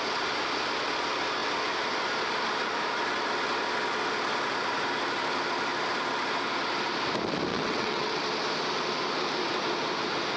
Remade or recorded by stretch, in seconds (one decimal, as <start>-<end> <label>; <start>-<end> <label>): 0.0-7.5 recorded; 7.5-8.2 remade; 8.2-10.4 recorded